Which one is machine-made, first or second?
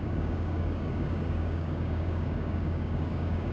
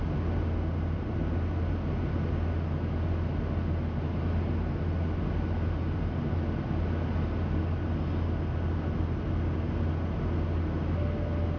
first